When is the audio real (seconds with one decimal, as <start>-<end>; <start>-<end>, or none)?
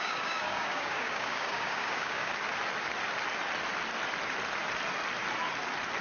2.3-6.0